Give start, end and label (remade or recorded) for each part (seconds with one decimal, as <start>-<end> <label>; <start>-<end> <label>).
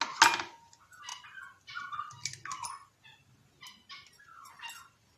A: 0.0-5.2 recorded